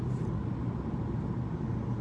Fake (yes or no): no